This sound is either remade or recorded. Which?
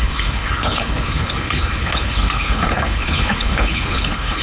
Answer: remade